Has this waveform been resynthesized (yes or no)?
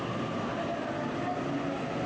no